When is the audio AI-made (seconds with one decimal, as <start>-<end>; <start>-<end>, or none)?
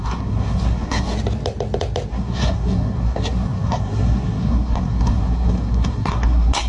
0.0-1.1; 2.1-6.7